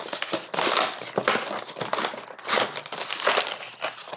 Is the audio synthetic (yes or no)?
no